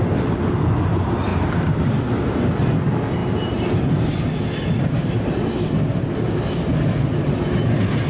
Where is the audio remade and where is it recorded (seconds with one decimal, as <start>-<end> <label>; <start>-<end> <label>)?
0.0-1.3 recorded; 1.3-1.8 remade; 1.8-3.2 recorded; 3.2-4.1 remade; 4.1-8.1 recorded